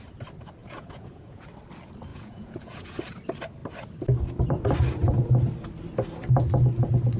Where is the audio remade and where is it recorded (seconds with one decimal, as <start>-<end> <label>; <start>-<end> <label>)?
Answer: 0.0-0.6 recorded; 0.6-1.5 remade; 1.5-2.1 recorded; 2.1-3.0 remade; 3.0-7.2 recorded